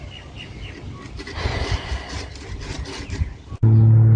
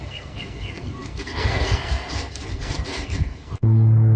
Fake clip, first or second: second